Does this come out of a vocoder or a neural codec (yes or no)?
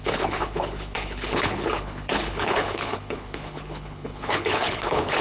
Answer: yes